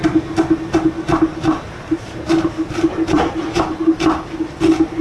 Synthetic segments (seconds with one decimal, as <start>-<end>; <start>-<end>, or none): 1.3-3.6